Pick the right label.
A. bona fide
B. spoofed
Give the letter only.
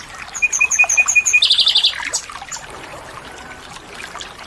A